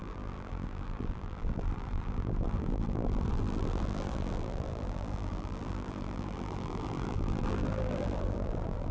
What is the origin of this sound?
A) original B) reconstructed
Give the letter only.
B